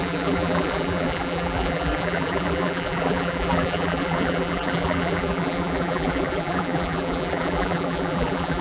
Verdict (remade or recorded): remade